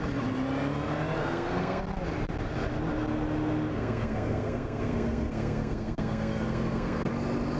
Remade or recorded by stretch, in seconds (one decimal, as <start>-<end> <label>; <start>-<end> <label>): 0.0-1.2 recorded; 1.2-1.8 remade; 1.8-3.7 recorded; 3.7-7.1 remade; 7.1-7.6 recorded